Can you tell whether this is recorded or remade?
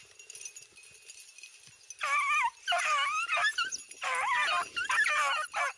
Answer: recorded